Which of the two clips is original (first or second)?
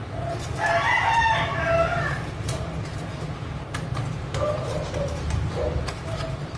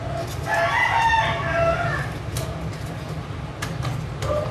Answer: second